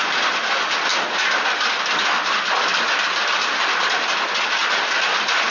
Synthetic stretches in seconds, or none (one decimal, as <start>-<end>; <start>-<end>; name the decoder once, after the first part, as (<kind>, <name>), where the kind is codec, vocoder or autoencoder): none